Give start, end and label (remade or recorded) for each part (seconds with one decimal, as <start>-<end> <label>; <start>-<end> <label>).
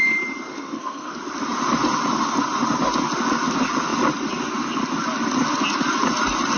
0.0-0.5 recorded; 0.5-1.1 remade; 1.1-6.6 recorded